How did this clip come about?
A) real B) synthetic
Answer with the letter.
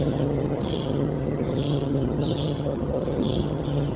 B